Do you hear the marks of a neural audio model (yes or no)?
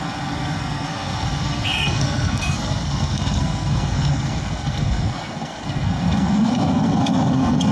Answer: yes